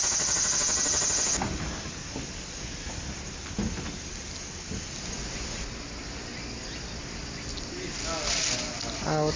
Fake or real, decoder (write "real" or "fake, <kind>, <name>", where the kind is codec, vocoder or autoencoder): real